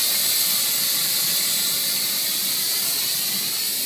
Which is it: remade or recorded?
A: recorded